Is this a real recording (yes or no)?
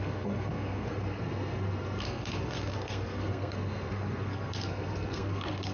no